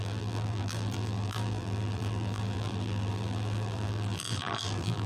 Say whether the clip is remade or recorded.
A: remade